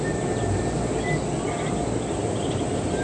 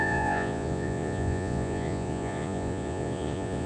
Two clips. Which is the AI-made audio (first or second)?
second